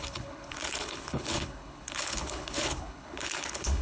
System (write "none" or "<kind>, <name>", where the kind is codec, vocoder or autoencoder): codec, HILCodec